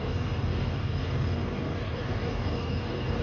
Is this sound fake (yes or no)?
yes